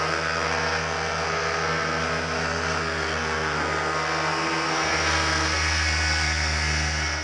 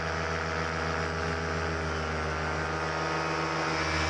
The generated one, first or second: first